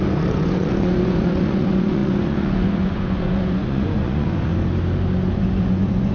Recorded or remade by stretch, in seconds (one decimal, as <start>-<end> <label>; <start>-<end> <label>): 0.0-4.5 remade; 4.5-5.3 recorded; 5.3-6.1 remade